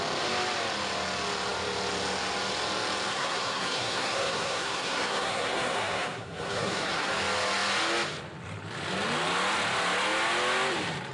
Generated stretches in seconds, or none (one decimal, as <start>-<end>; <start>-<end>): 3.1-7.1